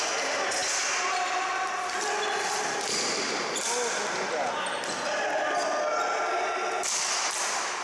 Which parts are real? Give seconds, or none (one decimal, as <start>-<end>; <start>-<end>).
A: 0.0-7.8